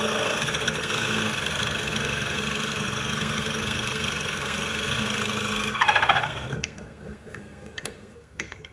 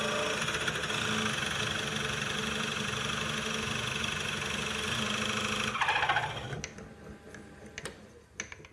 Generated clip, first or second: first